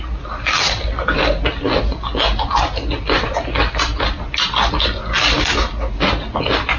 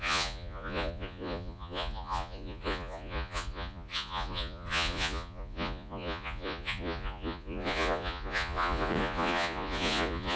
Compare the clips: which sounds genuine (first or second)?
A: first